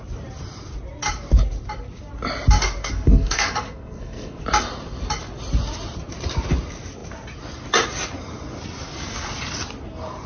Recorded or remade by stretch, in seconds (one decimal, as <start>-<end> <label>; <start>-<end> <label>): 0.0-2.8 recorded; 2.8-4.4 remade; 4.4-10.3 recorded